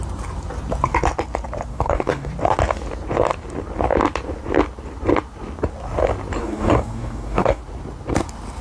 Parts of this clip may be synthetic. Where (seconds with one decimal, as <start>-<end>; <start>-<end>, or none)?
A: 1.7-2.3; 6.4-7.6